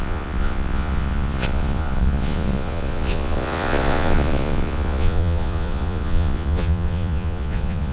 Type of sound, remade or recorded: remade